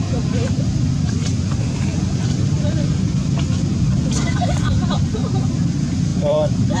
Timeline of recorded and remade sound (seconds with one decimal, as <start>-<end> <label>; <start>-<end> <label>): 0.0-6.1 recorded; 6.1-6.8 remade